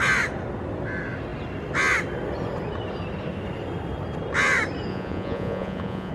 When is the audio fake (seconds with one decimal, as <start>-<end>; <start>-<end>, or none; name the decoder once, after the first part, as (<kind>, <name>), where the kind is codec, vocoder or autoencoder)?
4.9-6.1 (vocoder, Vocos)